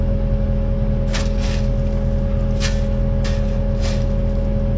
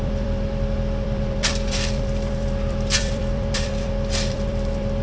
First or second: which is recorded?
first